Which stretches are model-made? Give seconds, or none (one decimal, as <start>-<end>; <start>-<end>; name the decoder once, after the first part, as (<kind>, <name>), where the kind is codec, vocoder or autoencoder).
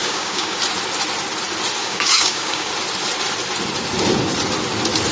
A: 0.0-0.6 (codec, DAC); 1.8-2.7